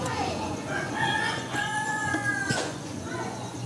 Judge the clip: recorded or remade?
remade